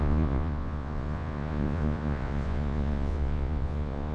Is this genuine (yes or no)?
no